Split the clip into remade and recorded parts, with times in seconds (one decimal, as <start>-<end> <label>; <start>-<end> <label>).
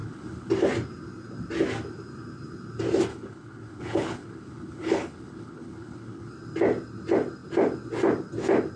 0.0-0.5 remade; 0.5-3.1 recorded; 3.1-6.3 remade; 6.3-8.8 recorded